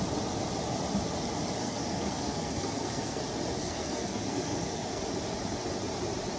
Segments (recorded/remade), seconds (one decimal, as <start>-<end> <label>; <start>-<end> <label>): 0.0-1.6 recorded; 1.6-3.2 remade; 3.2-3.6 recorded; 3.6-5.0 remade; 5.0-6.4 recorded